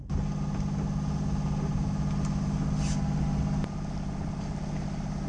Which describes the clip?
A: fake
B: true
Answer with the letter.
B